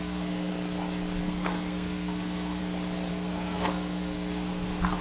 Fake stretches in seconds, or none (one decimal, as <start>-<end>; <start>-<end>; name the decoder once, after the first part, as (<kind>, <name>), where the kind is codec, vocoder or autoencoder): 0.0-0.5 (codec, SNAC); 1.2-2.6; 3.1-5.0